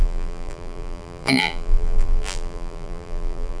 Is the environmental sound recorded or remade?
remade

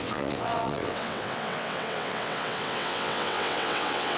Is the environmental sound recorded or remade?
remade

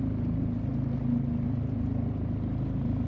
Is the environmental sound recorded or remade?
recorded